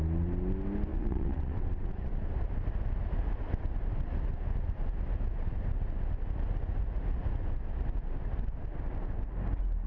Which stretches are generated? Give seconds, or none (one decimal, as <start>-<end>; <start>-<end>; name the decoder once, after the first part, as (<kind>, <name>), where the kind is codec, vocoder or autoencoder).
0.9-2.1 (vocoder, WaveNeXt)